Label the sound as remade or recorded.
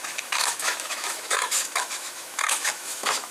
remade